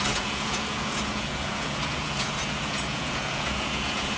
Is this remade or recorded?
remade